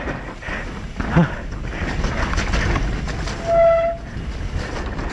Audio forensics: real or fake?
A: real